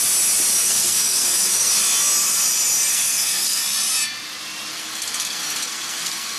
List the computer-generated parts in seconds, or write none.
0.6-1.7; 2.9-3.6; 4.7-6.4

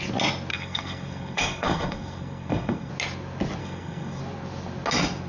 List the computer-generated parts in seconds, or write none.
0.5-2.9; 3.6-4.2

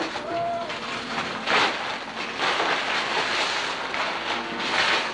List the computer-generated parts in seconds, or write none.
none